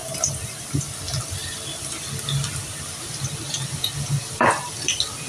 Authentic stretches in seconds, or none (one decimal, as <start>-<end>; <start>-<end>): 0.8-1.4; 4.5-5.3